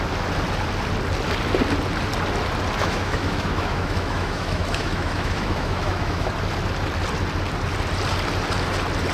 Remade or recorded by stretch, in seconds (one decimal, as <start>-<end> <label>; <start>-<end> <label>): 0.0-2.8 recorded; 2.8-6.3 remade; 6.3-9.1 recorded